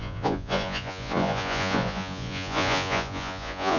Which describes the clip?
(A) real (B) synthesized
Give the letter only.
B